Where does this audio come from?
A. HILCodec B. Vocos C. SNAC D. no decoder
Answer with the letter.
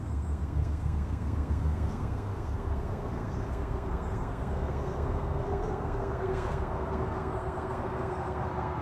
C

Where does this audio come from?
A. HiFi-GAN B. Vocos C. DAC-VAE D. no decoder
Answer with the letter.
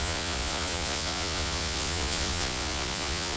B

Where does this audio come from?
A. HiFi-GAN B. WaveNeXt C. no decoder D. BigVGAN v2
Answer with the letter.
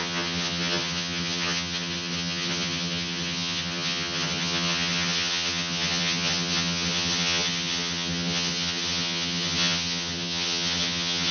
A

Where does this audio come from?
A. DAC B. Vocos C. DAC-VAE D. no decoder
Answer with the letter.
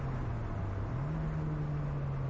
D